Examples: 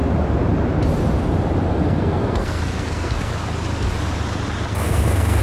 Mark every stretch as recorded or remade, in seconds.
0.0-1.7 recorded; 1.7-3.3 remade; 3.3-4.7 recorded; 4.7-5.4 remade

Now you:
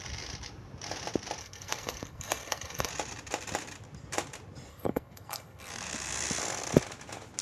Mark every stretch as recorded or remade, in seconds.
0.0-1.4 recorded; 1.4-2.9 remade; 2.9-4.7 recorded; 4.7-5.7 remade; 5.7-7.4 recorded